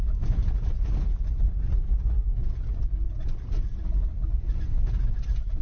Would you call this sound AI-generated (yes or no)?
no